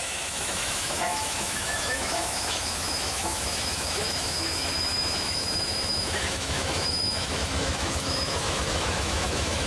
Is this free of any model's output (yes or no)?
no